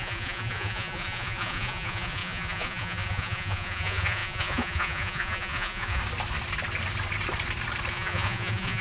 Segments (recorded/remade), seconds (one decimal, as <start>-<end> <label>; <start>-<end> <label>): 0.0-6.0 remade; 6.0-7.9 recorded; 7.9-8.8 remade